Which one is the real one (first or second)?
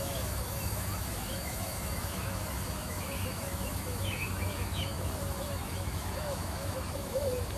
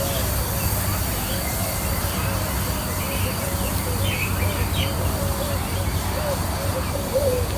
second